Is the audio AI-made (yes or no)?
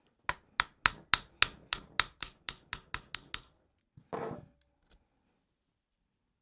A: no